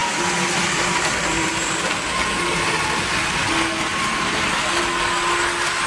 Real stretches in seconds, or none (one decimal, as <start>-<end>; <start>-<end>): 3.5-3.9; 4.6-5.9